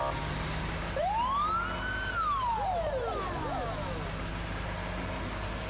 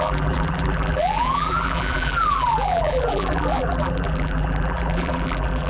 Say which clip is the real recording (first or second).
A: first